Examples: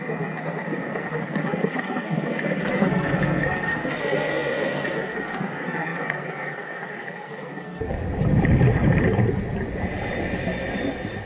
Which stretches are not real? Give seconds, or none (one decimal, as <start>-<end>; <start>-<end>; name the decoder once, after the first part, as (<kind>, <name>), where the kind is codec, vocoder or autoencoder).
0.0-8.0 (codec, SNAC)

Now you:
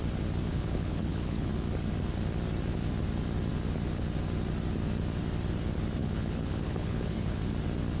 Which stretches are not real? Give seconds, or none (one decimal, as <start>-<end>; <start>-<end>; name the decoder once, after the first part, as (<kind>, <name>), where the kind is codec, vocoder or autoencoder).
0.5-1.5 (codec, HILCodec); 6.0-7.4

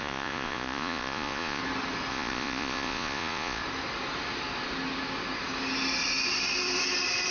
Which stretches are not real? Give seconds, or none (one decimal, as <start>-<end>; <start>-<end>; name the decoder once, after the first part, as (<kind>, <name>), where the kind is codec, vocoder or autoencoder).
0.0-1.6 (vocoder, Vocos); 2.1-3.6

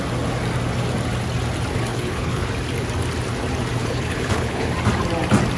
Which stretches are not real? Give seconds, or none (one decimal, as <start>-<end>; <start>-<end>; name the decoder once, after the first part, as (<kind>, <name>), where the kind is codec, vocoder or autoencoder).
1.9-2.5 (codec, HILCodec); 3.8-4.7